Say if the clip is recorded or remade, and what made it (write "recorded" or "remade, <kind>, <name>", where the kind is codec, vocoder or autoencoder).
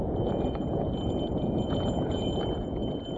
remade, vocoder, Vocos